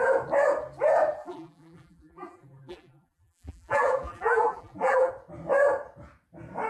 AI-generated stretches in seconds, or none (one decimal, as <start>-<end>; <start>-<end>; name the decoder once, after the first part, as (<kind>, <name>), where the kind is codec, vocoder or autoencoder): 1.2-5.1 (vocoder, BigVGAN v2)